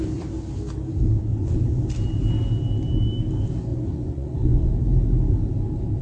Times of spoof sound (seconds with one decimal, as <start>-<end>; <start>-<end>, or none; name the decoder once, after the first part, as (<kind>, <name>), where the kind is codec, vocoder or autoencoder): 1.3-1.8 (vocoder, Vocos); 3.7-4.7